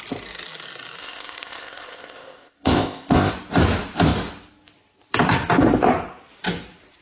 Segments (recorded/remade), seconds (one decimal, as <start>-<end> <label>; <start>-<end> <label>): 0.0-1.0 recorded; 1.0-3.3 remade; 3.3-7.0 recorded